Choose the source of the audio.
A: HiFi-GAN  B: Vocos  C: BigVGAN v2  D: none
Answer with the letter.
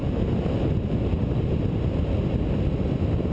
D